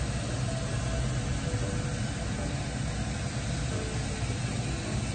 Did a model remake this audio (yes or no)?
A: no